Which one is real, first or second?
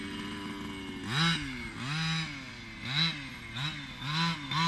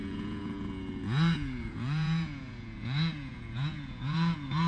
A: first